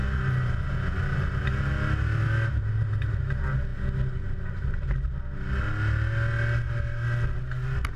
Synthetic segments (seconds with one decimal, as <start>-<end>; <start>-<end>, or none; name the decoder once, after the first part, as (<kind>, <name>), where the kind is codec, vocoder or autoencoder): none